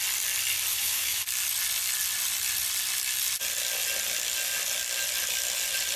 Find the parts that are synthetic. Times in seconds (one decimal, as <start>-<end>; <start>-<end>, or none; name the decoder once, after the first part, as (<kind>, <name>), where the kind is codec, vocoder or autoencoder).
0.7-1.2 (autoencoder, DAC-VAE)